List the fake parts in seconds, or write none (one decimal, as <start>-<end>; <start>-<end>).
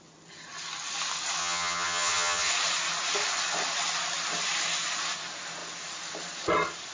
1.4-2.5